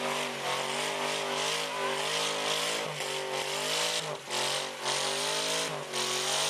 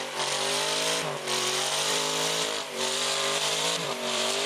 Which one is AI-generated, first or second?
second